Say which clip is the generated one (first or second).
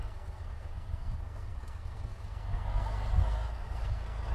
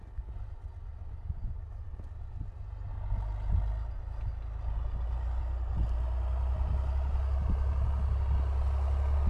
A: first